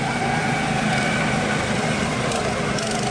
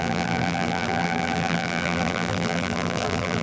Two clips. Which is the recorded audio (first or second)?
first